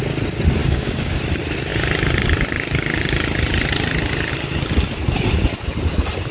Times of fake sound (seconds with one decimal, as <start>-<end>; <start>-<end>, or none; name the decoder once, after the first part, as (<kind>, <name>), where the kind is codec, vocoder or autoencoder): 0.6-1.2 (codec, DAC)